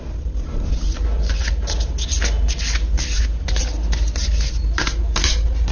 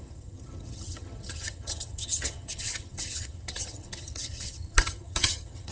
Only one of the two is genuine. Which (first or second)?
first